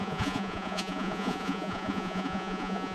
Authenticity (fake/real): fake